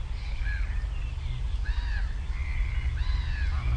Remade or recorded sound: recorded